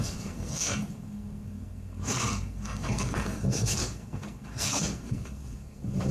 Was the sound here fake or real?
fake